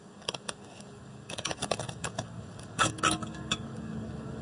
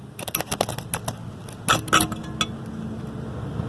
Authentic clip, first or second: second